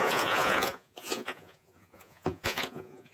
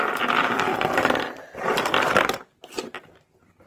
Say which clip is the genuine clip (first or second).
second